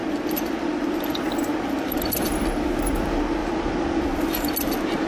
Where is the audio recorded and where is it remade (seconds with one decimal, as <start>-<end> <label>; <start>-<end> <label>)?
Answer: 0.0-5.1 recorded

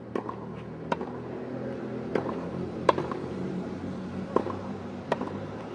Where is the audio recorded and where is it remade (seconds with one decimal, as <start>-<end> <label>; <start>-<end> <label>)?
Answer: 0.0-2.1 recorded; 2.1-5.7 remade

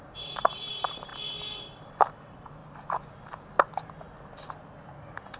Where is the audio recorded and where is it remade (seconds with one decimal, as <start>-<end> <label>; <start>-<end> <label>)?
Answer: 0.0-1.1 remade; 1.1-1.8 recorded; 1.8-2.6 remade; 2.6-4.9 recorded; 4.9-5.4 remade

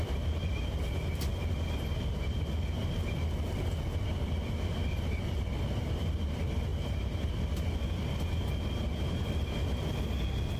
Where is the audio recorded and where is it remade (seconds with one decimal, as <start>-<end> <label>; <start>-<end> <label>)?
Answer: 0.0-0.6 remade; 0.6-6.7 recorded; 6.7-7.4 remade; 7.4-10.6 recorded

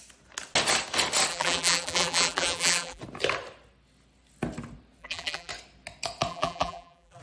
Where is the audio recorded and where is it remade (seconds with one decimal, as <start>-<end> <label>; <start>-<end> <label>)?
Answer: 0.0-1.3 recorded; 1.3-3.0 remade; 3.0-5.0 recorded; 5.0-5.5 remade; 5.5-6.3 recorded; 6.3-7.2 remade

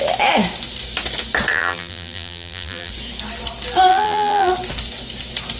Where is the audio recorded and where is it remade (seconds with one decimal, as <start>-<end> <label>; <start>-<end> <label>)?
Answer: 0.0-1.5 recorded; 1.5-2.9 remade; 2.9-3.9 recorded; 3.9-4.5 remade; 4.5-5.6 recorded